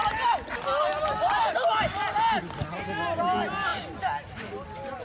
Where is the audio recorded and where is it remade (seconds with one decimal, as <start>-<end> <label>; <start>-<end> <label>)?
0.0-5.0 recorded